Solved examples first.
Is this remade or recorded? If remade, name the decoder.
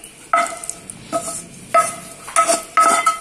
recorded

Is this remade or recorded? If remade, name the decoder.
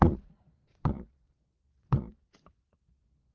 remade, vocoder, Vocos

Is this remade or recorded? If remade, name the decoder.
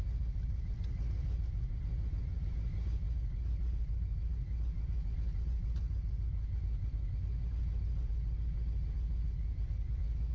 recorded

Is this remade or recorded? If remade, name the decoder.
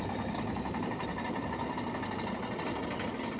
recorded